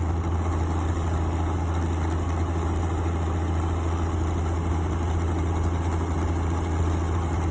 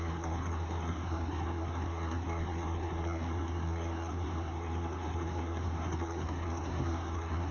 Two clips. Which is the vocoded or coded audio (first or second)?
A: second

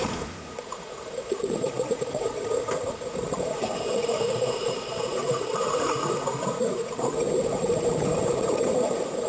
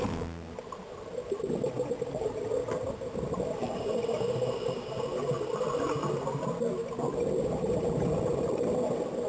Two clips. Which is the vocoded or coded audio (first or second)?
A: first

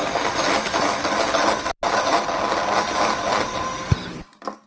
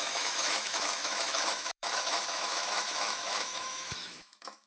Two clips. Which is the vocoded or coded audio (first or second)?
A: second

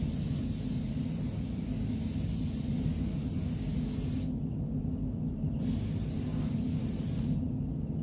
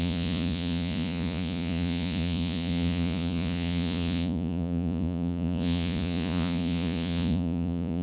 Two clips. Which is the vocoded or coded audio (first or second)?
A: second